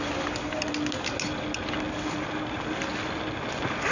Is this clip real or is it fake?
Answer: real